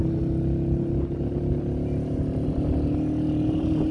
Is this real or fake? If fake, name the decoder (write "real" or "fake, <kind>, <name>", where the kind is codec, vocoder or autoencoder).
real